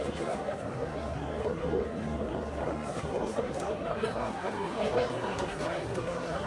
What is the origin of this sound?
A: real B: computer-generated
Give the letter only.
B